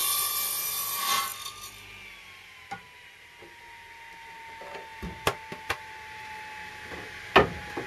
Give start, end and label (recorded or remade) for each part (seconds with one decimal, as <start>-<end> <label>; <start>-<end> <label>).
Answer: 0.0-7.9 recorded